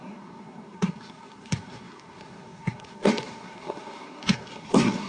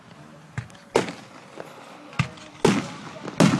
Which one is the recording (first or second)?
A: second